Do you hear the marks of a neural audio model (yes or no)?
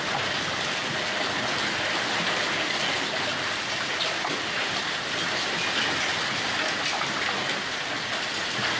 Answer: no